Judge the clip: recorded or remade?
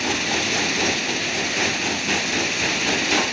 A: remade